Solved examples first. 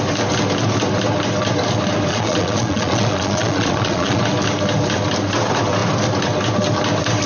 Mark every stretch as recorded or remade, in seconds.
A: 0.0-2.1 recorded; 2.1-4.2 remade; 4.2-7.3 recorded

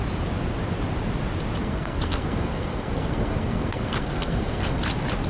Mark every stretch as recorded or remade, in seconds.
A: 0.0-1.6 recorded; 1.6-4.8 remade; 4.8-5.3 recorded

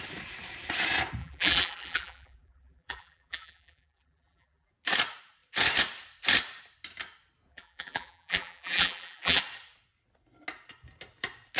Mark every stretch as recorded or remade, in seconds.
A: 0.0-1.2 recorded; 1.2-4.7 remade; 4.7-7.5 recorded; 7.5-9.4 remade; 9.4-11.6 recorded

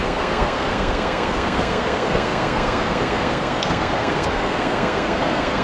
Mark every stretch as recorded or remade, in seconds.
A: 0.0-5.6 remade

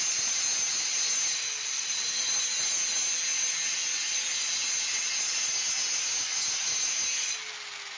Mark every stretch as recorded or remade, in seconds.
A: 0.0-8.0 recorded

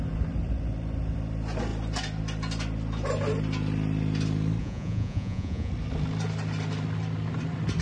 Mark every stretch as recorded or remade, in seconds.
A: 0.0-4.6 recorded; 4.6-5.7 remade; 5.7-7.8 recorded